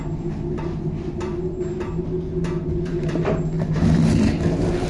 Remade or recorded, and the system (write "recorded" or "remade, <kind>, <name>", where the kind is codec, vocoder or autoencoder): recorded